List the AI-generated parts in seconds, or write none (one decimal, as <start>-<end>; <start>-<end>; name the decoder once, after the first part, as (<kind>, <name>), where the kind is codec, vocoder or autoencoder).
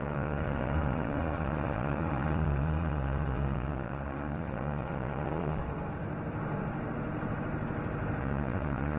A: 0.0-5.6 (vocoder, Vocos); 8.2-9.0